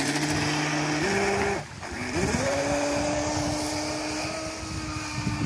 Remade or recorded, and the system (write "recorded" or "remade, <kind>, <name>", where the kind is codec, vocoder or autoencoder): recorded